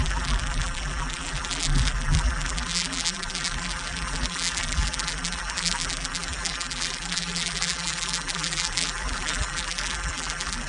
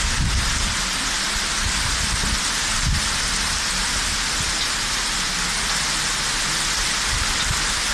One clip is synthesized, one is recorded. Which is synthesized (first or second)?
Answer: first